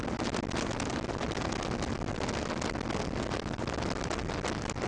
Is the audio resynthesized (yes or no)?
no